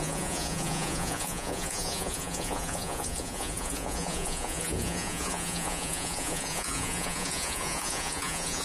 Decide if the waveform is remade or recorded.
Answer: remade